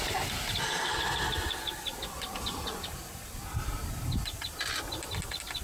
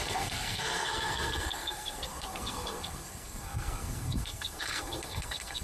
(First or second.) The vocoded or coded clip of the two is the second